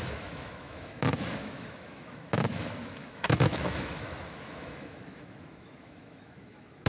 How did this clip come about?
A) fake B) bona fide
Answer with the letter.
A